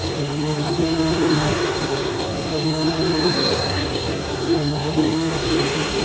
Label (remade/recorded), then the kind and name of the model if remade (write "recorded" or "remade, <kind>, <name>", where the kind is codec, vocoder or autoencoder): remade, codec, SNAC